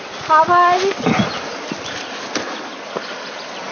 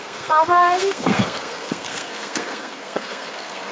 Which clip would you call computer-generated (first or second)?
second